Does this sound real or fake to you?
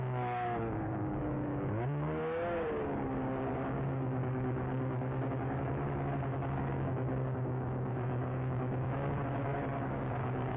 fake